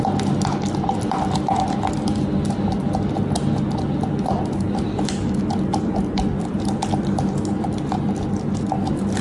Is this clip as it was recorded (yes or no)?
yes